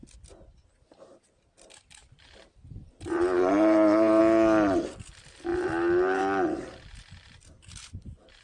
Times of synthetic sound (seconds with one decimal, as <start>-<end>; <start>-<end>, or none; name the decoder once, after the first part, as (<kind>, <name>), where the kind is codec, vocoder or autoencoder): 2.0-4.2 (vocoder, BigVGAN v2); 5.5-6.2